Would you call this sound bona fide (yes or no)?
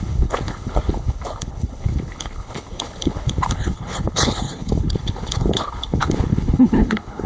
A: no